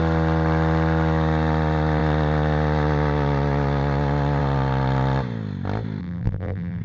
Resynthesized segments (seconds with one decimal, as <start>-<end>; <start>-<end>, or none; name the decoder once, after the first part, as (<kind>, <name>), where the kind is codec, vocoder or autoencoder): 6.0-6.8 (vocoder, BigVGAN v2)